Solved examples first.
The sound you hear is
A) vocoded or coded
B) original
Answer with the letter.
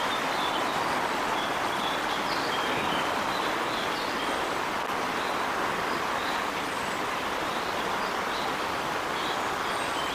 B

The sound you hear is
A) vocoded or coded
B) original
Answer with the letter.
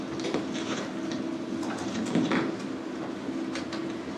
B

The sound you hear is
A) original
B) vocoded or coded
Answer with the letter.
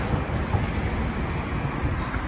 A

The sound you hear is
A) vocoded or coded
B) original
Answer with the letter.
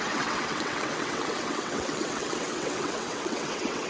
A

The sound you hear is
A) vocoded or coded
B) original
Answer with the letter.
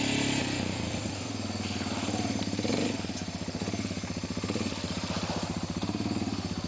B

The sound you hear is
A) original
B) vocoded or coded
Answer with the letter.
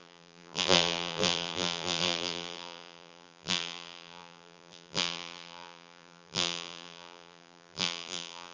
B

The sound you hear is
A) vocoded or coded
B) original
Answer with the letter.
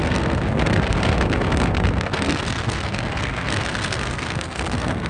A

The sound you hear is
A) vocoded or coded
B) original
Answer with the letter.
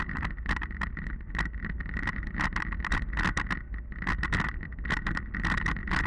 B